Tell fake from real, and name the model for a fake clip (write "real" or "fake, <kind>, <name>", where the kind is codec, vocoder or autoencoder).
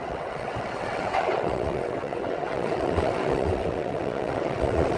fake, vocoder, WaveNeXt